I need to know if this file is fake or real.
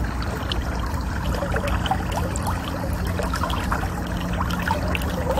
real